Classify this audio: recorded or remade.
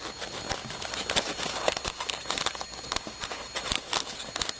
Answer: recorded